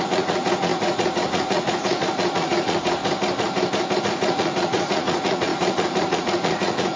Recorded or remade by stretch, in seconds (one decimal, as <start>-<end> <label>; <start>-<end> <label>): 0.0-3.0 remade; 3.0-4.0 recorded; 4.0-7.0 remade